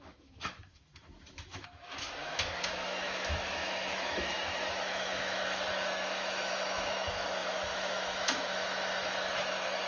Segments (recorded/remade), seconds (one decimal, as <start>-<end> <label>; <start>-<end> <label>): 0.0-9.9 remade